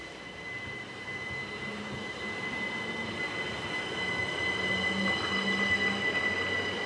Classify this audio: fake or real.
real